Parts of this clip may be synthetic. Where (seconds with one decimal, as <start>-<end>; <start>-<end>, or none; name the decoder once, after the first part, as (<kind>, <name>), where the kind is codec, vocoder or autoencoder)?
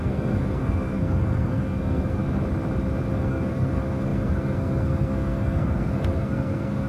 0.0-2.2 (codec, SNAC); 3.1-6.9